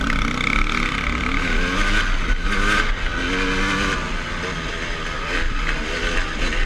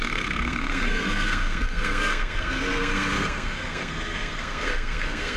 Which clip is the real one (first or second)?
first